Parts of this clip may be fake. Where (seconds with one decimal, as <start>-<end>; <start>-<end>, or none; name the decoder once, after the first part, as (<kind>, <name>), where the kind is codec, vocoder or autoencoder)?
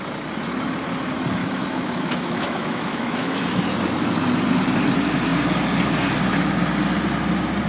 1.4-3.6 (autoencoder, DAC-VAE)